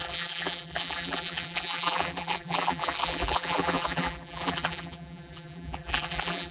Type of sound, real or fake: fake